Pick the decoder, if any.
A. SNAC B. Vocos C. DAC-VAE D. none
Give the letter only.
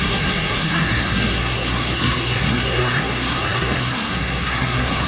A